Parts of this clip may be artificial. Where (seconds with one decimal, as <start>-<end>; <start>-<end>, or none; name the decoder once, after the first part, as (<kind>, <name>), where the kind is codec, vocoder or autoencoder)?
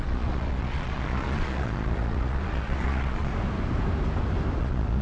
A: 0.0-3.3 (vocoder, Vocos); 4.6-5.0